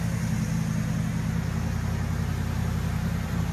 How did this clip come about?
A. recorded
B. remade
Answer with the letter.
A